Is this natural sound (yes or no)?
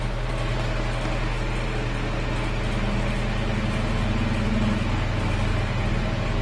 yes